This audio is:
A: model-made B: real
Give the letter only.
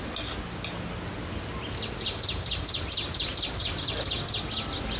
B